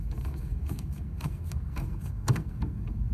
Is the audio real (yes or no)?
no